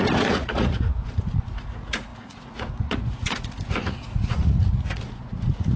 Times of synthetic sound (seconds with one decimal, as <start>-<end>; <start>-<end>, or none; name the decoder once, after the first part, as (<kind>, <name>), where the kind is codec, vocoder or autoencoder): 0.0-5.8 (vocoder, Vocos)